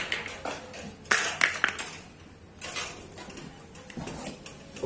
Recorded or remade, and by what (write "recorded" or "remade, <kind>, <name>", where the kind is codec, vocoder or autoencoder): recorded